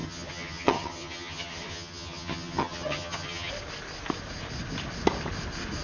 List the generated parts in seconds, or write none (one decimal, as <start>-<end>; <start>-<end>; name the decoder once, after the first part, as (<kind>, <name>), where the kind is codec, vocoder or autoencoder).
0.0-3.5 (vocoder, HiFi-GAN)